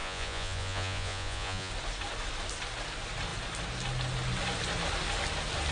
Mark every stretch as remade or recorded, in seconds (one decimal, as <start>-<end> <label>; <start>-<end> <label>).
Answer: 0.0-1.7 remade; 1.7-5.7 recorded